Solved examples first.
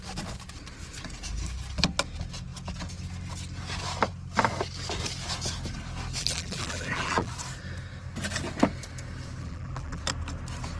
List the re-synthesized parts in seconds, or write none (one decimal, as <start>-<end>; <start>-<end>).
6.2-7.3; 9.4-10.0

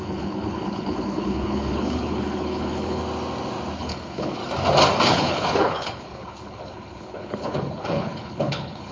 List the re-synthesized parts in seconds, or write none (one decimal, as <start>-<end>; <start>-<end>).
0.0-3.0; 3.8-4.4; 5.1-8.9

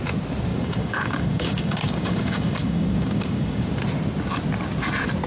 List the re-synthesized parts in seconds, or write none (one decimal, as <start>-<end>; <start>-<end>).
0.5-3.7

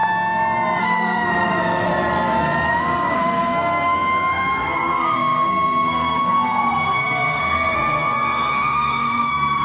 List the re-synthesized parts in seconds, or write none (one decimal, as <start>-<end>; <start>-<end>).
0.8-1.9; 2.7-9.6

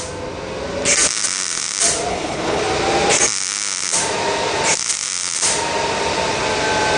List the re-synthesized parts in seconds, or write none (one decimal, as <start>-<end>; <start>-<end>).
2.1-2.6